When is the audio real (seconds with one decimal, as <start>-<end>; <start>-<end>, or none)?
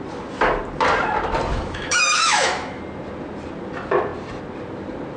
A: 0.0-1.5; 2.8-5.2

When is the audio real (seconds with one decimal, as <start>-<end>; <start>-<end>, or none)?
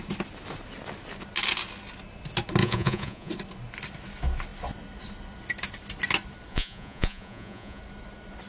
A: 0.0-2.6; 3.3-6.5; 7.8-8.5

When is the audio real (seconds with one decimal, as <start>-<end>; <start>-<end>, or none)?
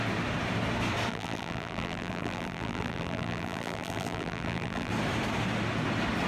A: 0.0-1.1; 4.9-6.3